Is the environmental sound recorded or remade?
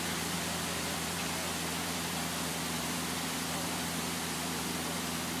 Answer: remade